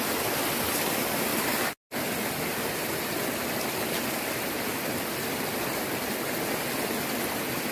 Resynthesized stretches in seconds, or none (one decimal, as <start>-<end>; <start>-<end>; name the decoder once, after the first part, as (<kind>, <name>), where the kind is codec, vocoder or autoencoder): none